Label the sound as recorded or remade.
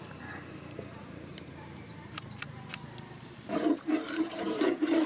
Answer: remade